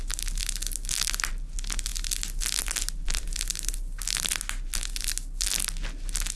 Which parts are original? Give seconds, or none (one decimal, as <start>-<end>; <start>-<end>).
0.0-6.4